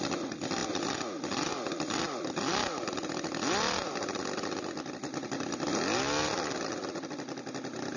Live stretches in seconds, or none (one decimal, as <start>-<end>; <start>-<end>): 0.0-8.0